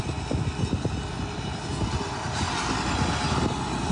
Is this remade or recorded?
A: recorded